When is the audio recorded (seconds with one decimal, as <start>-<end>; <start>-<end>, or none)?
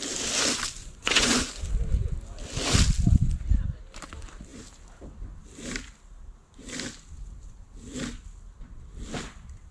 0.0-0.8; 1.6-9.7